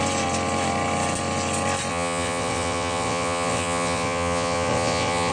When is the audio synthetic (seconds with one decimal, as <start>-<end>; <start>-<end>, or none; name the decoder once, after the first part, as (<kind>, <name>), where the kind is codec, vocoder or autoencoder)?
1.9-5.3 (vocoder, WaveNeXt)